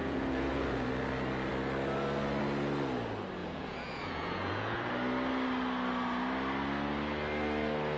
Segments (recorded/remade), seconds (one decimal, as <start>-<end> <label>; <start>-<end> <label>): 0.0-0.9 remade; 0.9-3.4 recorded; 3.4-4.9 remade; 4.9-8.0 recorded